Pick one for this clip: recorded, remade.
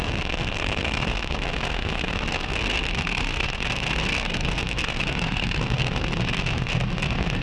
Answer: remade